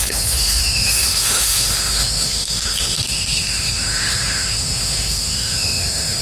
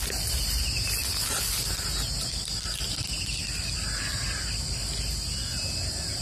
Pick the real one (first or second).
second